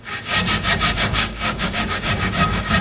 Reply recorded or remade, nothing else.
remade